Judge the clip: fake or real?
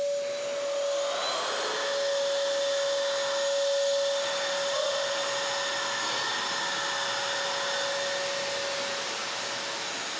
real